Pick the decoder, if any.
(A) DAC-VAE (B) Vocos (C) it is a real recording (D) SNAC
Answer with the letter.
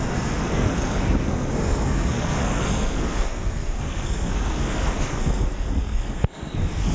D